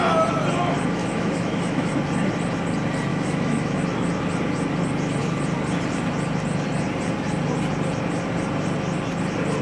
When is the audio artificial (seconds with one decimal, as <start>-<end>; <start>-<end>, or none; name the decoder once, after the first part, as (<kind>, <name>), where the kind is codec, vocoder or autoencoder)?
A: 1.0-1.9 (autoencoder, DAC-VAE); 3.1-3.8